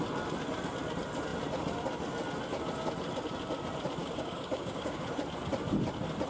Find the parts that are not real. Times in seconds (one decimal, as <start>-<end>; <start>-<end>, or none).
4.0-5.0